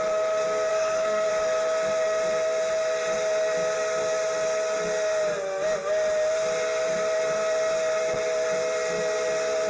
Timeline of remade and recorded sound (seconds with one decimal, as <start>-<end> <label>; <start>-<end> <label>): 0.0-0.7 recorded; 0.7-1.3 remade; 1.3-9.7 recorded

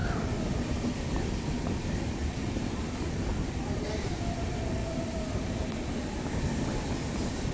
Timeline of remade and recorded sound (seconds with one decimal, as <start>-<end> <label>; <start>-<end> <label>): 0.0-7.5 recorded

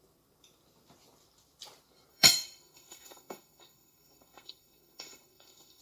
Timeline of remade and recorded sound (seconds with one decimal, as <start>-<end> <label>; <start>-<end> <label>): 0.0-2.1 recorded; 2.1-5.8 remade

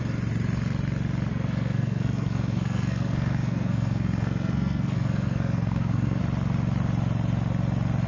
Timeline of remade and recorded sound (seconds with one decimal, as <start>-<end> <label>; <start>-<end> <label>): 0.0-1.3 recorded; 1.3-6.2 remade; 6.2-8.1 recorded

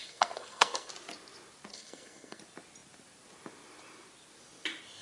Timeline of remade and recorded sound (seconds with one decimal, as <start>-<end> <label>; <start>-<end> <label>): 0.0-0.9 remade; 0.9-1.7 recorded; 1.7-2.4 remade; 2.4-5.0 recorded

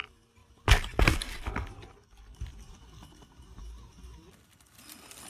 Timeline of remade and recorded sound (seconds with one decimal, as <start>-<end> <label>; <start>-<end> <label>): 0.0-5.3 recorded